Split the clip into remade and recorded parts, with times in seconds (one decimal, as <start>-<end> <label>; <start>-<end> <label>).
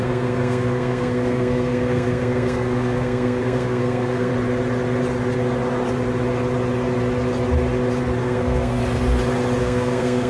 0.0-4.3 remade; 4.3-8.2 recorded; 8.2-8.8 remade; 8.8-9.6 recorded; 9.6-10.3 remade